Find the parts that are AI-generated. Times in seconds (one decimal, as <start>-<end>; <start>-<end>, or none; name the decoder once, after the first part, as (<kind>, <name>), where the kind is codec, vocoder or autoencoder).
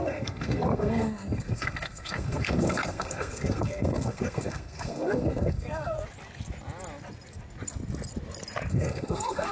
0.0-6.0 (codec, SNAC); 8.7-9.5